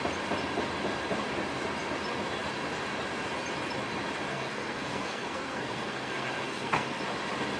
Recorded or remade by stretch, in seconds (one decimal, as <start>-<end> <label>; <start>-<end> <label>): 0.0-4.3 recorded; 4.3-7.0 remade; 7.0-7.6 recorded

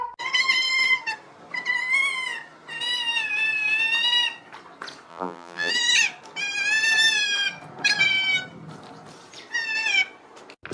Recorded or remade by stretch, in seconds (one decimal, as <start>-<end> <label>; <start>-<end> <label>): 0.0-5.1 recorded; 5.1-5.7 remade; 5.7-10.7 recorded

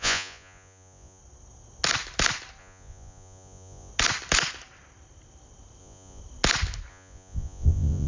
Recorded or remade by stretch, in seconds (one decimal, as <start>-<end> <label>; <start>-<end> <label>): 0.0-1.2 remade; 1.2-2.6 recorded; 2.6-3.9 remade; 3.9-5.8 recorded; 5.8-6.2 remade; 6.2-6.9 recorded; 6.9-8.1 remade

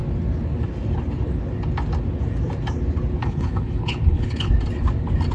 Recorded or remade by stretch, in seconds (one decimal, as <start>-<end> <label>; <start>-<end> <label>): 0.0-3.2 recorded; 3.2-4.5 remade; 4.5-5.3 recorded